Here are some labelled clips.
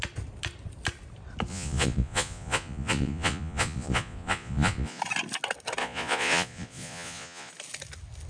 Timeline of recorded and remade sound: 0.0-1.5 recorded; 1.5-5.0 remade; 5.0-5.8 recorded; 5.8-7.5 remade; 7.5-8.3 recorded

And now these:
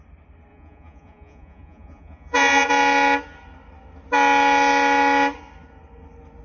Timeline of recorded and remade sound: 0.0-0.5 recorded; 0.5-2.7 remade; 2.7-6.4 recorded

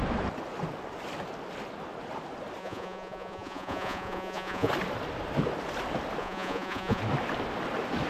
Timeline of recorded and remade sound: 0.0-2.6 recorded; 2.6-4.7 remade; 4.7-6.2 recorded; 6.2-7.0 remade; 7.0-8.1 recorded

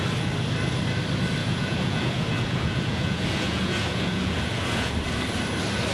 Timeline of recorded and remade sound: 0.0-1.4 recorded; 1.4-4.9 remade; 4.9-5.9 recorded